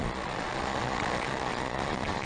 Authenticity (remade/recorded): remade